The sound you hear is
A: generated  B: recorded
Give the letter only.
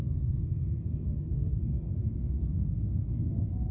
A